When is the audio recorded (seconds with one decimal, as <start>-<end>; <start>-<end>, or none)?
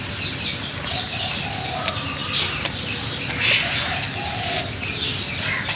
0.0-5.8